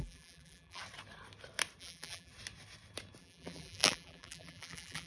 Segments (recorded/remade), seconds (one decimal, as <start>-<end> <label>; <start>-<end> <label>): 0.0-0.8 remade; 0.8-1.8 recorded; 1.8-2.3 remade; 2.3-3.2 recorded; 3.2-5.1 remade